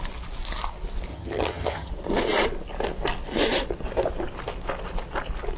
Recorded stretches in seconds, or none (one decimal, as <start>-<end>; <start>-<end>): 0.0-1.1; 1.9-5.6

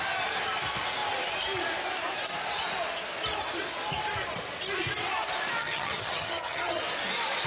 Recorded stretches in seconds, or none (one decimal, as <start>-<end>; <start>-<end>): 0.0-5.6; 6.8-7.5

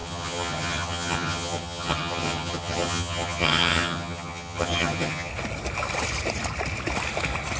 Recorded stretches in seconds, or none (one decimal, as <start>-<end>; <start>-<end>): 5.3-7.6

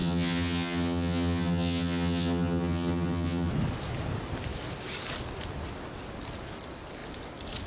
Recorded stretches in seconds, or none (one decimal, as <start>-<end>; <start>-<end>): 3.5-7.7

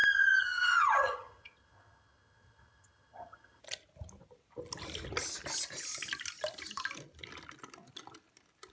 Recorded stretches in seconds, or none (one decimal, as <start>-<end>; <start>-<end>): 3.6-8.7